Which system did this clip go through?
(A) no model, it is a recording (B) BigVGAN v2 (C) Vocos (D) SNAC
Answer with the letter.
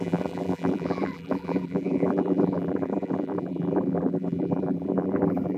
B